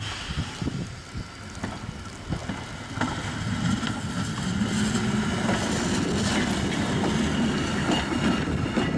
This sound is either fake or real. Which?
real